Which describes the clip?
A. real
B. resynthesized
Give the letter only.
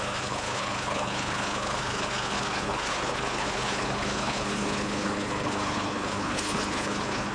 B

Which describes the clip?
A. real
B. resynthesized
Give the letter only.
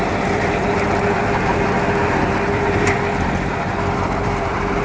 B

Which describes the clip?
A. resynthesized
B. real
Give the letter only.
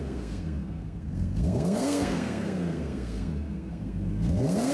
A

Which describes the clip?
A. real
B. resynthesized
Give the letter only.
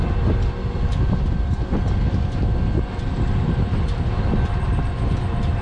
A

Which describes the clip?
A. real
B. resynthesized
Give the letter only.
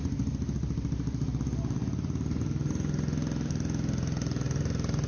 A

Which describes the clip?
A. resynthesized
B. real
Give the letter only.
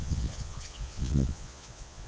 A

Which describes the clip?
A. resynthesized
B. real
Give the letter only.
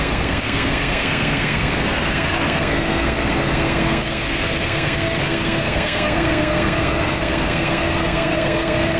A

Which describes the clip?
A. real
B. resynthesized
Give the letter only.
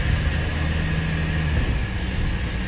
A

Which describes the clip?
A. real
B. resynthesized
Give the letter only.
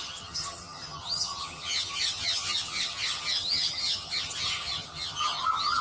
B